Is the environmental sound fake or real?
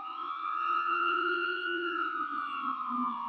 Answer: fake